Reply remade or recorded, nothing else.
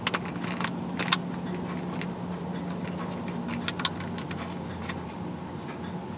recorded